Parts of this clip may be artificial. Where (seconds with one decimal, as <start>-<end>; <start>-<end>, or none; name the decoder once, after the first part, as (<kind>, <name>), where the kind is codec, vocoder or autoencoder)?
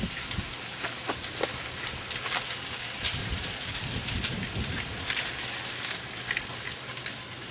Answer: none